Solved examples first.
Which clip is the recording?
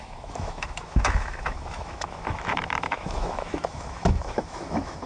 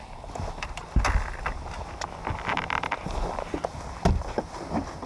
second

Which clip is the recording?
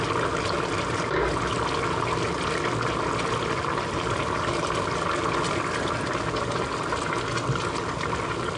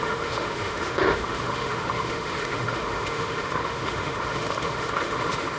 first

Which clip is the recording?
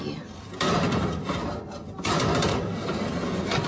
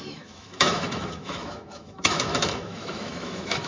first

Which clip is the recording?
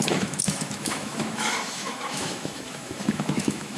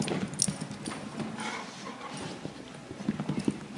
second